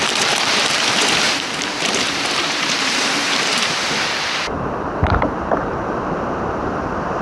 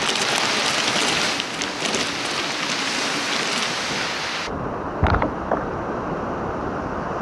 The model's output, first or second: first